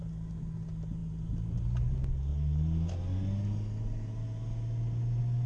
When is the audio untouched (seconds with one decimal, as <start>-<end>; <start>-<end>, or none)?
0.0-5.5